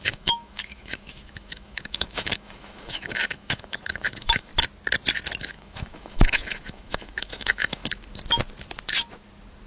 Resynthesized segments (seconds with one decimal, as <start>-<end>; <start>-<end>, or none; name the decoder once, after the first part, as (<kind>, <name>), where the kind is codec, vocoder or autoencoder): 0.0-4.5 (autoencoder, DAC-VAE); 5.4-7.8